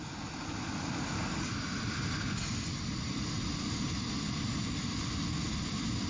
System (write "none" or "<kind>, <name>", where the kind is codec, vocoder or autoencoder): none